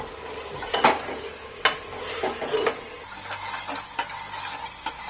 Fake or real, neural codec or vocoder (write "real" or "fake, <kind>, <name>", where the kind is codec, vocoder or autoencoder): real